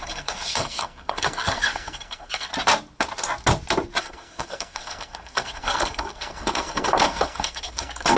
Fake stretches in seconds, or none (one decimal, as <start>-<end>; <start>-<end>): 0.0-2.5; 4.0-8.2